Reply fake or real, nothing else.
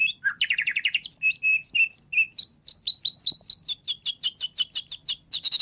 real